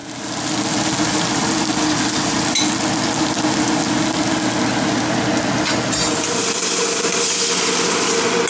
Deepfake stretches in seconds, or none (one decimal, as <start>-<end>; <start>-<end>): none